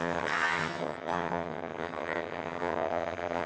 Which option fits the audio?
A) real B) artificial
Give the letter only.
B